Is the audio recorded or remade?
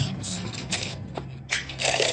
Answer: remade